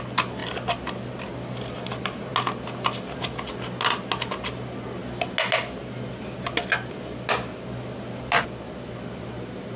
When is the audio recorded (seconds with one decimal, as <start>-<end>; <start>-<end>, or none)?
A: 0.0-9.8